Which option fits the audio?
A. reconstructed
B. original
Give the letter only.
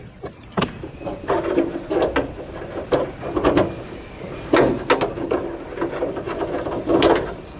B